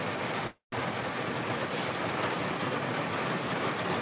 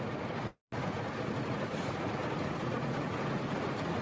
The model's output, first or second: second